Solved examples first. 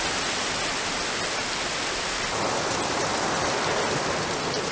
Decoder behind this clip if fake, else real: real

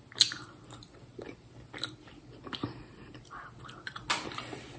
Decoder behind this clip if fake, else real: real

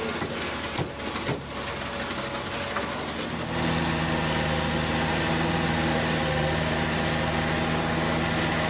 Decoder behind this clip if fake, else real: real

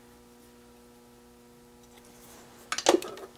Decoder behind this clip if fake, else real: real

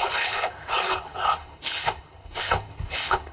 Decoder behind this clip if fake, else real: fake, codec, HILCodec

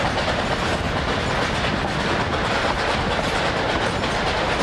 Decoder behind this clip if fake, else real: real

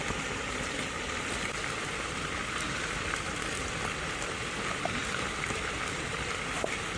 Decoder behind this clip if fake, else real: real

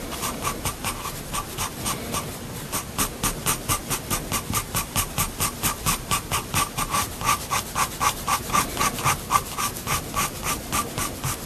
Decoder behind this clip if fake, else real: fake, vocoder, BigVGAN v2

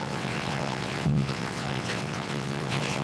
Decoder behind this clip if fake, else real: fake, vocoder, WaveNeXt